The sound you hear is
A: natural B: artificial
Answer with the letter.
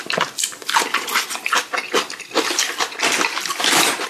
B